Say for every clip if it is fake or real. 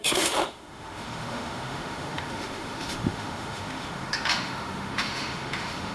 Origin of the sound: fake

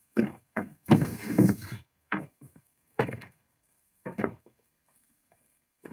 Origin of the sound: fake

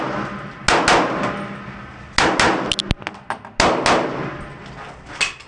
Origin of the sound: real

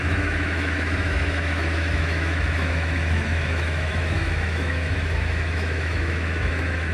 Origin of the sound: fake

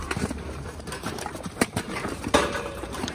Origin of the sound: fake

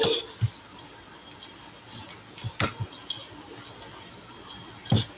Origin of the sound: real